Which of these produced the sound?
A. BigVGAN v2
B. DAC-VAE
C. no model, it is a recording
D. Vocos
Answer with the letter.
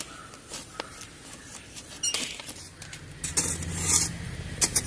C